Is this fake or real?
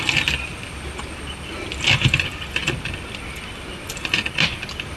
real